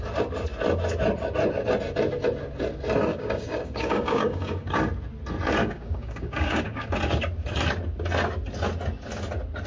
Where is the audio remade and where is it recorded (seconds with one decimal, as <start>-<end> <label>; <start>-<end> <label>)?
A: 0.0-3.1 recorded; 3.1-4.8 remade; 4.8-5.6 recorded; 5.6-6.9 remade; 6.9-9.7 recorded